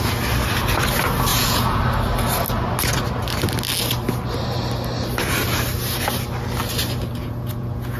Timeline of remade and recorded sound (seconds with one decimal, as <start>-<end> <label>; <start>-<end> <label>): 0.0-1.3 recorded; 1.3-1.8 remade; 1.8-7.2 recorded; 7.2-8.0 remade